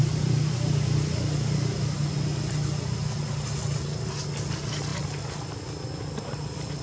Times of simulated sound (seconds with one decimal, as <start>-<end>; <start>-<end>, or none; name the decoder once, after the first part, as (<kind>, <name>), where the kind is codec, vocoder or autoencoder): none